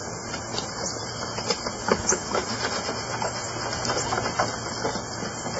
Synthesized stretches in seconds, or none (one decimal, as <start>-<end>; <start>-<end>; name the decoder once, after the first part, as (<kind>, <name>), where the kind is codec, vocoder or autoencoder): 1.8-2.6 (autoencoder, DAC-VAE)